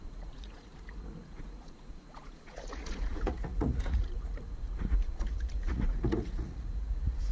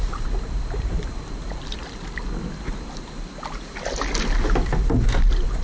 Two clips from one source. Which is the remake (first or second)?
first